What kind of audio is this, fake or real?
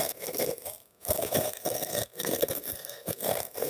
fake